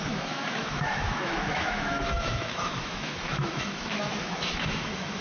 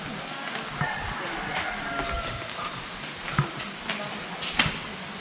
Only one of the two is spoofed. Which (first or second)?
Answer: first